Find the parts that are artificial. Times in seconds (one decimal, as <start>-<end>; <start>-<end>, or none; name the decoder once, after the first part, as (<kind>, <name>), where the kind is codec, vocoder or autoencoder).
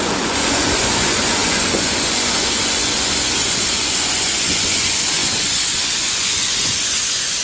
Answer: 0.0-7.4 (vocoder, Vocos)